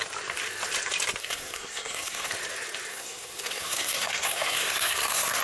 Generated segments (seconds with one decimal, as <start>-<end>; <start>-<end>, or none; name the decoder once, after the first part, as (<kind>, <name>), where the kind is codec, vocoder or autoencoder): 1.2-2.3 (codec, SNAC); 2.9-5.4